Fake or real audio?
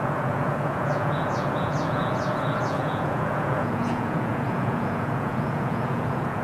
fake